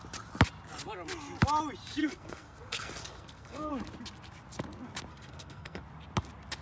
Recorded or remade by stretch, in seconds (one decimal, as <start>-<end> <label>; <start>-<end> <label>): 0.0-2.0 recorded; 2.0-3.7 remade; 3.7-5.1 recorded; 5.1-5.8 remade; 5.8-6.6 recorded